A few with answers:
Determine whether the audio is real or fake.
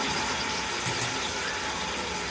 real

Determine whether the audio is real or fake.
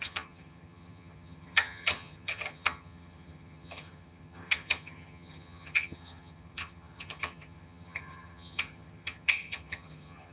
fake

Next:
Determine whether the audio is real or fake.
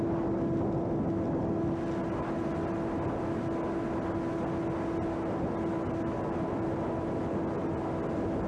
real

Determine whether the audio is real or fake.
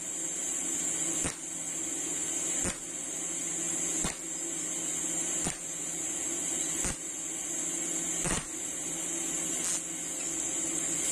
real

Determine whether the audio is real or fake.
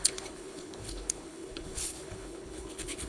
fake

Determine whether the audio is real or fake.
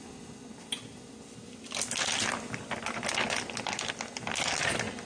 real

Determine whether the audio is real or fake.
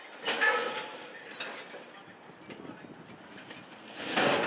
real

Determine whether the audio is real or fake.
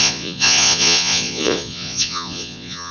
fake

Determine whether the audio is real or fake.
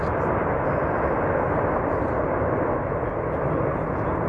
real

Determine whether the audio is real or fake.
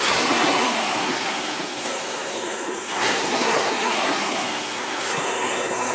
fake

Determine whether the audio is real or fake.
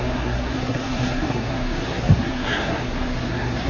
fake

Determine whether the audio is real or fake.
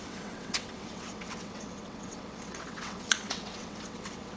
fake